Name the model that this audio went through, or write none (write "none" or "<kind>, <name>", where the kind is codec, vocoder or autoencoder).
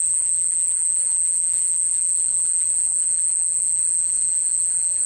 vocoder, BigVGAN v2